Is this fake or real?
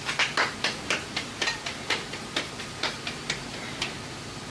real